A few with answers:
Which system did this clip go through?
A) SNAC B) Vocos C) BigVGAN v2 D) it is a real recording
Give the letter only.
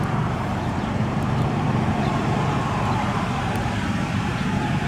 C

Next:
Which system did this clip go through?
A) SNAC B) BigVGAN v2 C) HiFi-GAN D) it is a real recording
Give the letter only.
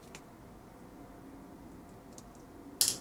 D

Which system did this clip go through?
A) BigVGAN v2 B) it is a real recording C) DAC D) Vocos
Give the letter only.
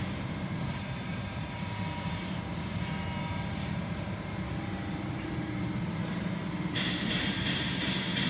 A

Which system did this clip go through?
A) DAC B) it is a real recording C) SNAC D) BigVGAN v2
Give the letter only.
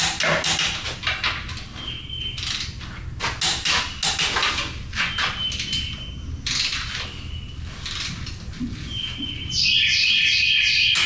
B